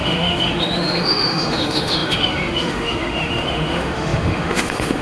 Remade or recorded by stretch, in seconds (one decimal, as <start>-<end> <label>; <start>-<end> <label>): 0.0-5.0 remade

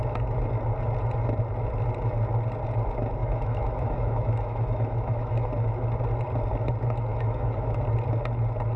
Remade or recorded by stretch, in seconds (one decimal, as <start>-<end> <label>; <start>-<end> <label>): 0.0-3.2 recorded; 3.2-5.5 remade; 5.5-7.1 recorded; 7.1-7.8 remade; 7.8-8.8 recorded

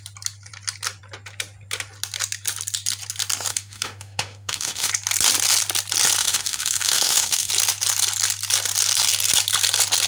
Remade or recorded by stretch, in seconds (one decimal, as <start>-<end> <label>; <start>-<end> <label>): 0.0-3.5 recorded; 3.5-4.9 remade; 4.9-6.2 recorded; 6.2-7.5 remade; 7.5-10.1 recorded